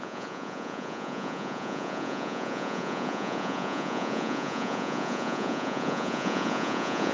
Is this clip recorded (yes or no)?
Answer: no